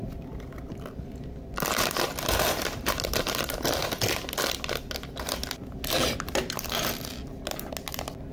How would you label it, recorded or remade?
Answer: recorded